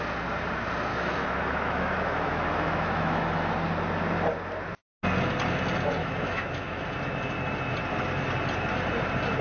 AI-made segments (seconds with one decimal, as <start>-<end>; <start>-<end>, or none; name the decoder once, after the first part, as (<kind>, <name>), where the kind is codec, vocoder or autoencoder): 0.9-3.5 (autoencoder, DAC-VAE); 6.0-6.9